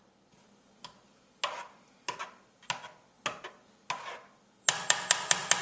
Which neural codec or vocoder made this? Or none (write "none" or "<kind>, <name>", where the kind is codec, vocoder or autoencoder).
none